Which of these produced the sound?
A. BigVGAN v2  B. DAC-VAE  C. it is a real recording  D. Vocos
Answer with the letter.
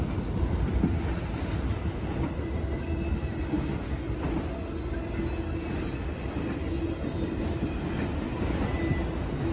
C